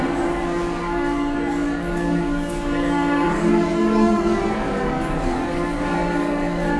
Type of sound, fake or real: fake